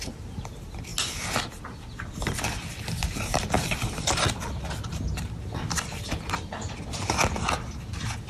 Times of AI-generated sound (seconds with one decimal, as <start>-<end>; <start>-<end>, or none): none